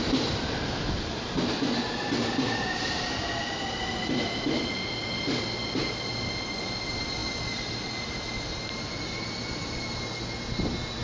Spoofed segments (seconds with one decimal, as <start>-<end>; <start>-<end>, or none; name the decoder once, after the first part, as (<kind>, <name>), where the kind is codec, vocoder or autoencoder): none